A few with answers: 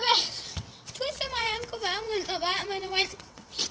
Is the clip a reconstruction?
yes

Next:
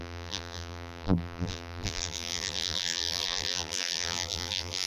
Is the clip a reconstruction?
yes